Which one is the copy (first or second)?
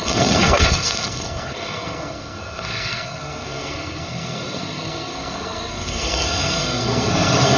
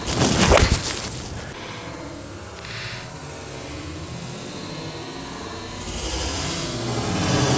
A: first